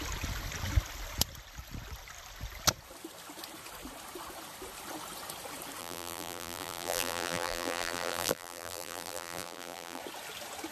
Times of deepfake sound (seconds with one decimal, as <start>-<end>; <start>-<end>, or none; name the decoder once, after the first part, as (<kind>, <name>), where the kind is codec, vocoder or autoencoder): 5.8-10.0 (vocoder, BigVGAN v2)